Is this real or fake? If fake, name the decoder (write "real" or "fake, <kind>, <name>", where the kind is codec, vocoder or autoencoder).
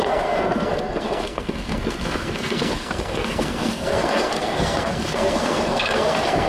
fake, codec, SNAC